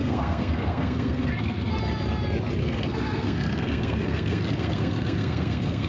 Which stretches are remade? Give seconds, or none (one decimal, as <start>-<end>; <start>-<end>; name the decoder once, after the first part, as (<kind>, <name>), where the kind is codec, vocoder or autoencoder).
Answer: 0.0-1.8 (codec, SNAC); 2.6-5.9